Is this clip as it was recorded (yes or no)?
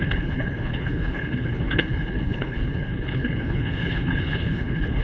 no